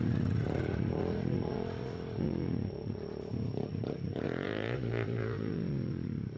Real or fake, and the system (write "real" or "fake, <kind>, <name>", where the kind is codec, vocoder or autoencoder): fake, vocoder, Vocos